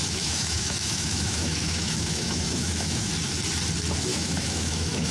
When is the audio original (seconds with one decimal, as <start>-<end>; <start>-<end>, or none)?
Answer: 3.1-4.1